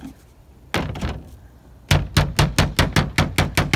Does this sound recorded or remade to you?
recorded